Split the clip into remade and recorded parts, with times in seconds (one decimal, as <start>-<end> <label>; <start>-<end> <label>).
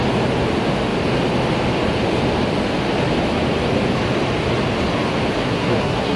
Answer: 0.0-5.4 recorded; 5.4-6.2 remade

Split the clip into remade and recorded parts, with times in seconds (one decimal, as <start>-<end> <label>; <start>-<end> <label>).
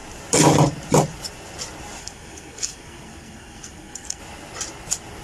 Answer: 0.0-2.0 recorded; 2.0-4.2 remade; 4.2-5.2 recorded